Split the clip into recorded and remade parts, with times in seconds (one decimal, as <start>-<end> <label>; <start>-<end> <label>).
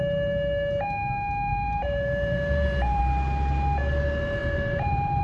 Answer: 0.0-1.5 recorded; 1.5-3.0 remade; 3.0-4.4 recorded; 4.4-5.2 remade